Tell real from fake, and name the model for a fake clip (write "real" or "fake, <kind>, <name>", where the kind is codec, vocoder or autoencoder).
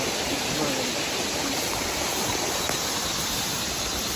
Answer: real